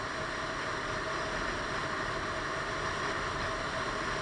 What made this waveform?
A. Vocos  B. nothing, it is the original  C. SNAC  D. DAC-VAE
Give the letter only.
B